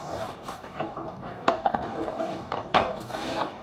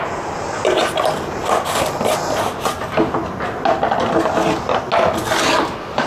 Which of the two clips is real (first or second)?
second